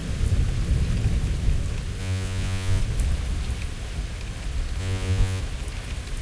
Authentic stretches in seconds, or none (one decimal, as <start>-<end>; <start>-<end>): 0.0-2.0; 2.8-4.8; 5.4-6.2